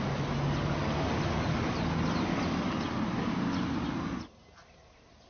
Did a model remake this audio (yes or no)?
no